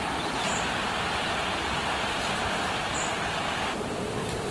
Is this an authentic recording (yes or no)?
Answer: yes